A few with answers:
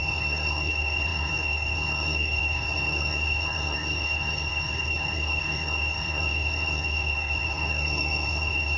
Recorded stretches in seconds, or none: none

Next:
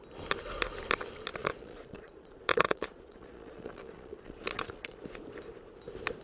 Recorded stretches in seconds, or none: 0.0-1.3; 5.0-6.2

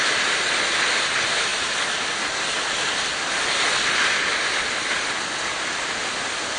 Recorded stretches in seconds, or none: 0.0-6.6

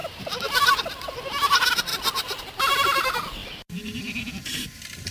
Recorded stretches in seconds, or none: 0.8-3.4; 4.3-5.1

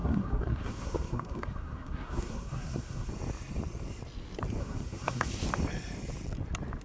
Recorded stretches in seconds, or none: 3.1-4.6; 5.3-6.8

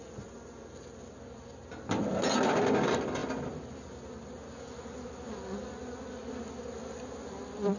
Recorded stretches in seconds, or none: 0.0-7.8

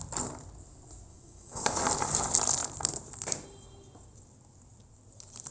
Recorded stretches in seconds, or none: 0.0-1.1; 1.8-5.5

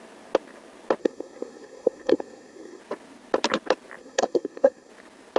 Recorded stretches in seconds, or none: 0.0-1.0; 2.8-4.0; 4.9-5.4